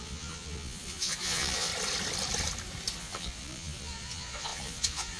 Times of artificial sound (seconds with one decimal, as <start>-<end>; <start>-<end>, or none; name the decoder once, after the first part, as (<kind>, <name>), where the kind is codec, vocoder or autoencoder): 0.0-1.7 (vocoder, Vocos); 3.0-5.2